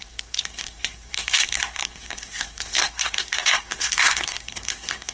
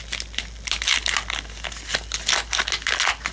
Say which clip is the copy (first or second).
first